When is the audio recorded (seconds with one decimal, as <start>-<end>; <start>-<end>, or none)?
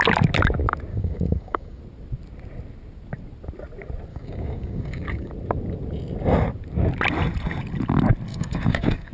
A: 0.0-0.9; 1.8-4.1; 5.3-8.3